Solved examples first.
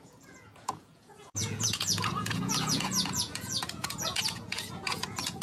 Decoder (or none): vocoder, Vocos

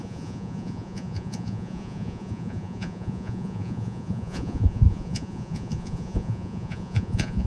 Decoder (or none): vocoder, Vocos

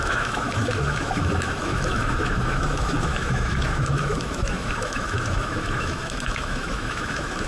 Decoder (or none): autoencoder, DAC-VAE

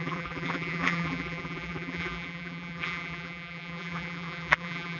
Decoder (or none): vocoder, BigVGAN v2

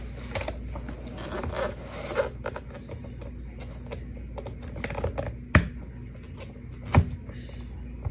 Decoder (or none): none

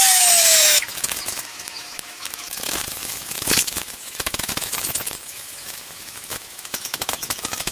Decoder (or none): autoencoder, DAC-VAE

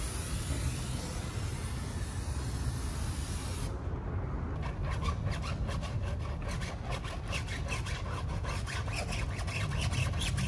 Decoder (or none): none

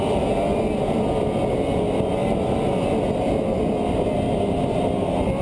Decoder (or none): none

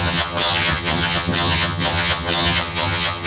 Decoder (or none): vocoder, HiFi-GAN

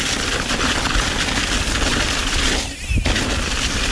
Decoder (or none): none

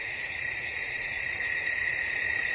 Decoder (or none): vocoder, Vocos